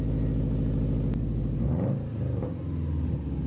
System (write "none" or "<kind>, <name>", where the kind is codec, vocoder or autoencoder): none